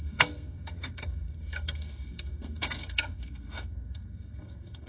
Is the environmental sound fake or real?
fake